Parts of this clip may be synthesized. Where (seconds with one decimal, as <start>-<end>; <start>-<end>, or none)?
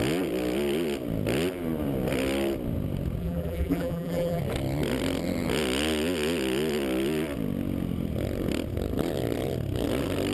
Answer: 3.2-4.4